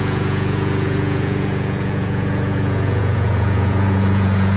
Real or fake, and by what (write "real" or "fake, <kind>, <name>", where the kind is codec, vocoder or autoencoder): fake, vocoder, Vocos